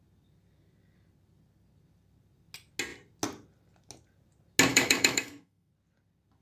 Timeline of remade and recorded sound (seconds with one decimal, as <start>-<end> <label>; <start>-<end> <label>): 0.0-4.7 recorded; 4.7-5.7 remade; 5.7-6.4 recorded